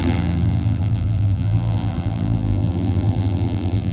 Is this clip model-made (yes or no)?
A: yes